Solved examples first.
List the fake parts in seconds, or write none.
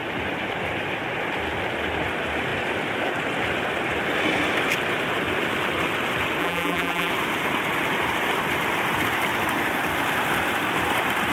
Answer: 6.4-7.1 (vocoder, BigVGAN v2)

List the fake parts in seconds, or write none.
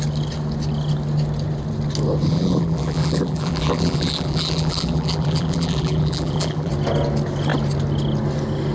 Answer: 2.3-6.7 (vocoder, BigVGAN v2)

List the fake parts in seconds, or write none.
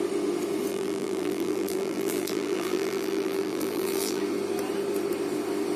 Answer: 0.7-4.2 (vocoder, BigVGAN v2)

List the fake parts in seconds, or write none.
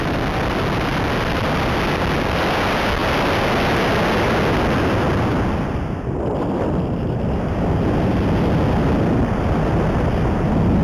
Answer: none